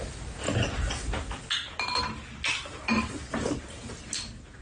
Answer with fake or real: real